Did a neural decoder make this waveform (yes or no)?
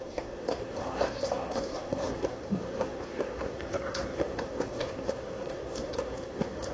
yes